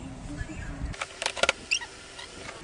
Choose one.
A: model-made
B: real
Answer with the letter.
B